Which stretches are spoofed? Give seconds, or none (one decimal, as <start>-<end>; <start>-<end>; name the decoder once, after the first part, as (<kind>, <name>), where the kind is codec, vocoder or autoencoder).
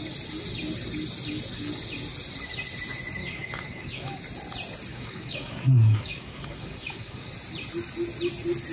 3.2-4.2 (codec, DAC); 4.9-7.3